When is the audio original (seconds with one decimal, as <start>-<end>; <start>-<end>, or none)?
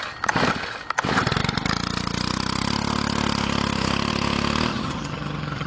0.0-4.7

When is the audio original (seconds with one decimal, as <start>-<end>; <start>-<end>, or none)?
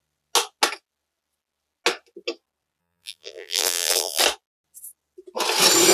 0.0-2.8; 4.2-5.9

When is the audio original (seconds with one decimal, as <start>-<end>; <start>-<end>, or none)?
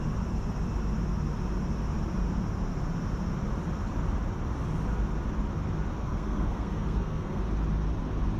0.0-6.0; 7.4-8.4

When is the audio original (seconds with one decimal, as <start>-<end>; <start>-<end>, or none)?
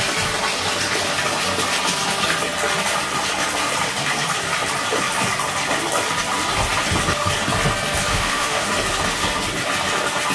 0.0-8.1; 8.7-10.3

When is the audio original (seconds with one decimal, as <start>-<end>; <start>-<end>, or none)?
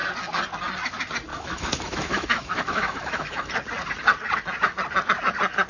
0.0-1.3; 3.5-5.7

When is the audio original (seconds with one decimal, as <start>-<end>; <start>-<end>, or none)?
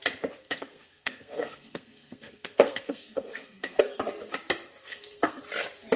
0.0-0.4; 4.0-4.8; 5.4-6.0